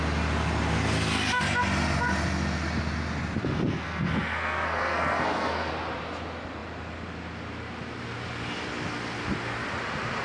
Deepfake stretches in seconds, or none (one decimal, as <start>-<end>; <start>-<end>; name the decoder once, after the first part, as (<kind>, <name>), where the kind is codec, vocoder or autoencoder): 3.4-5.7 (codec, SNAC)